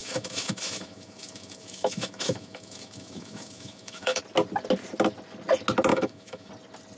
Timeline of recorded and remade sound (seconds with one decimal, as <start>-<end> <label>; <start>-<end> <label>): 0.0-4.2 remade; 4.2-5.9 recorded; 5.9-6.5 remade; 6.5-7.0 recorded